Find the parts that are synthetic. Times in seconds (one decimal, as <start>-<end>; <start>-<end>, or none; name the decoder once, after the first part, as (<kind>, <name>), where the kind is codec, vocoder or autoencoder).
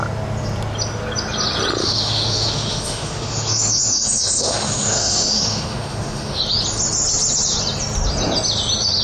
1.8-6.4 (autoencoder, DAC-VAE)